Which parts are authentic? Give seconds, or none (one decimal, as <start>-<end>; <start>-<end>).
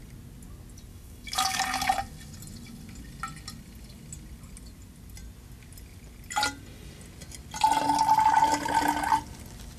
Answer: 0.0-0.9; 1.6-9.8